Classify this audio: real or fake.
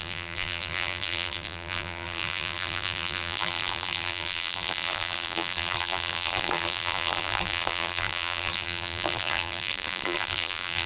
fake